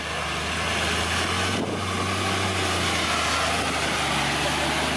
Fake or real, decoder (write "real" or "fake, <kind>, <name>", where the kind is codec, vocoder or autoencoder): real